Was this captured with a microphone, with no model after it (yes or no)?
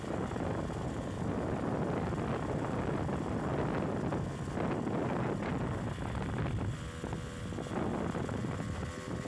yes